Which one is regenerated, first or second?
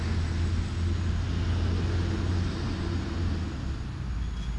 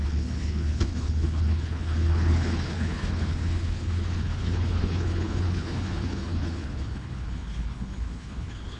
second